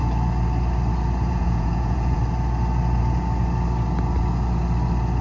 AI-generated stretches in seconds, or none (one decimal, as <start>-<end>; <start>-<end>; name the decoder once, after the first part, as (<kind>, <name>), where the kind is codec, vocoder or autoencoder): 1.3-2.2 (vocoder, Vocos)